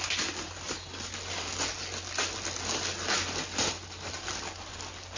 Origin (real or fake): real